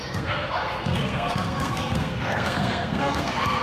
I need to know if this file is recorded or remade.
remade